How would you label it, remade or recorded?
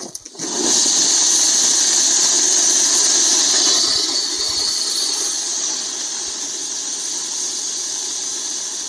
recorded